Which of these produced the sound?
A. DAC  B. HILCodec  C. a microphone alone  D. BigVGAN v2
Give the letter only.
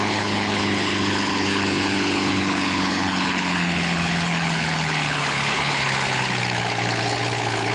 B